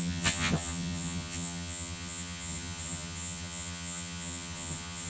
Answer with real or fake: fake